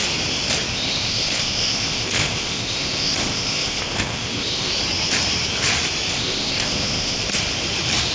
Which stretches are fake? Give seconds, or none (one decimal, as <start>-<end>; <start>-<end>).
0.7-4.7; 6.1-7.2